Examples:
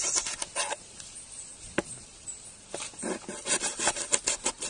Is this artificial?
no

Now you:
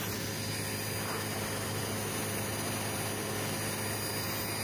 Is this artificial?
no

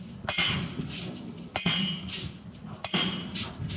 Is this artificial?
no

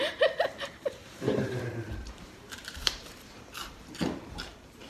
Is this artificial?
yes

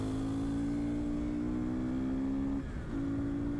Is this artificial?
no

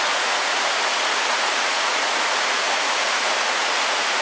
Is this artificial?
yes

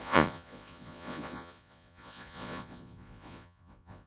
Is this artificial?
yes